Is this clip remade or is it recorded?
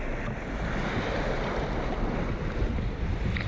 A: recorded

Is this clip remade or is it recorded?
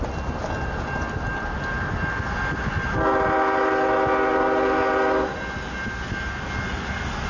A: recorded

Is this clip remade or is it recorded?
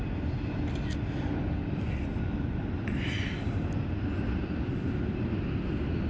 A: recorded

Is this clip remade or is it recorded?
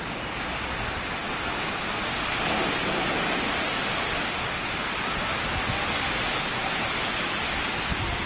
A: recorded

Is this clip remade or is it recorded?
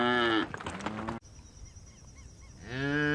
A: recorded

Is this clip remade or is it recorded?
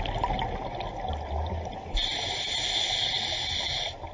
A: recorded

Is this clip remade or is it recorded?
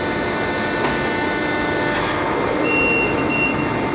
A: recorded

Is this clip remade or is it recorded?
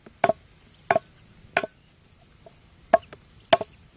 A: recorded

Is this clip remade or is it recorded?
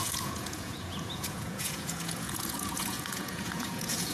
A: remade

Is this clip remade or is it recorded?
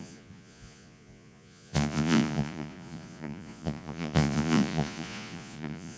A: remade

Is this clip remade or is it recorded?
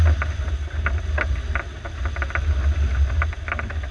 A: recorded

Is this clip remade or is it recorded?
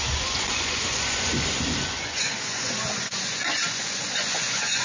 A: remade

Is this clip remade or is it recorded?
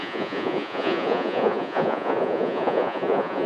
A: remade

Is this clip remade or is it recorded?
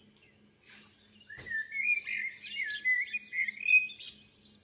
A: recorded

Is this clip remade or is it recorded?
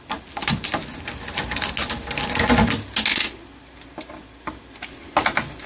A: recorded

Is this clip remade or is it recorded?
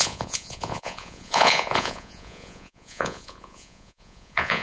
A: remade